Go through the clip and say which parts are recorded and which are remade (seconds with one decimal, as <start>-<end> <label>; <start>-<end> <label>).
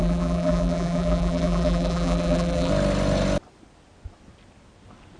0.0-2.7 remade; 2.7-5.2 recorded